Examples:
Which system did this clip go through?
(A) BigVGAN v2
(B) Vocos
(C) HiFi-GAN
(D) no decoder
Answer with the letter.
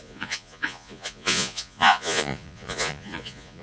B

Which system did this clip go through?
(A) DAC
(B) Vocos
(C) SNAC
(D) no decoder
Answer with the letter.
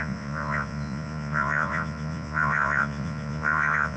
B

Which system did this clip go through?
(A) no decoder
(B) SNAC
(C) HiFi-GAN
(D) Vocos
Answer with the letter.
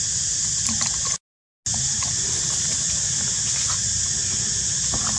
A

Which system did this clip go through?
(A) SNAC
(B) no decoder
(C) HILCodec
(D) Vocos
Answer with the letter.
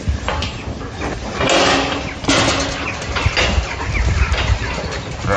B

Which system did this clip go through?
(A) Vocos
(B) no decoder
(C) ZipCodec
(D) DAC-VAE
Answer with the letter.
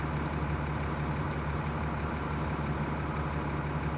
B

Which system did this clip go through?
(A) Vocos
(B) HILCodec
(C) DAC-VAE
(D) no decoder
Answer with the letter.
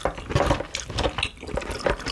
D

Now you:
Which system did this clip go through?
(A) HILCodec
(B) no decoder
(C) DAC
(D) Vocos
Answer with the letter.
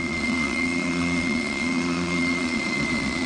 D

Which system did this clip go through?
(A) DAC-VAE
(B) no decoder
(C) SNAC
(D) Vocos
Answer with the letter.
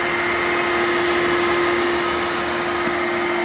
B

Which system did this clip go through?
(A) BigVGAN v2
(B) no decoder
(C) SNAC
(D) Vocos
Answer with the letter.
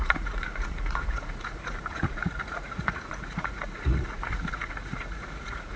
D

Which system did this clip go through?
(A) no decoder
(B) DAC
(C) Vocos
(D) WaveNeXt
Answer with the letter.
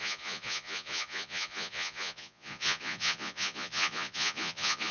C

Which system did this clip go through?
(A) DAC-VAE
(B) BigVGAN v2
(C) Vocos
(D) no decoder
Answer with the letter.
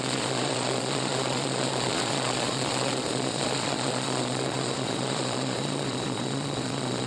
C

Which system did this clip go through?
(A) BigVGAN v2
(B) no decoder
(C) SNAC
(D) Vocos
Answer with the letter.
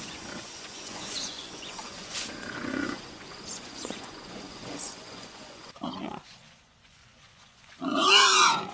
D